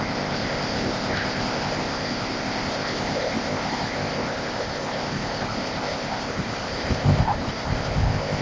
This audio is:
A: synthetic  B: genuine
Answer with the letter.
A